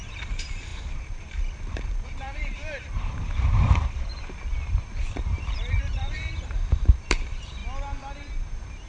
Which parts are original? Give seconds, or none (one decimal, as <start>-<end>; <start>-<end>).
4.1-5.2; 7.6-8.9